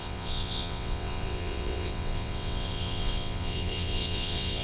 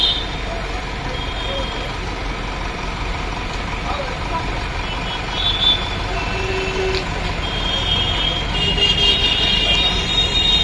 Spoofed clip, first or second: first